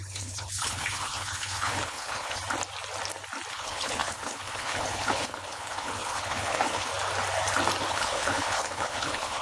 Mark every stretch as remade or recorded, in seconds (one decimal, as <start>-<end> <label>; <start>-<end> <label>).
0.0-2.4 remade; 2.4-3.5 recorded; 3.5-6.9 remade; 6.9-7.9 recorded; 7.9-9.4 remade